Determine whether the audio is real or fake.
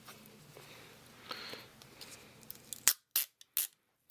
real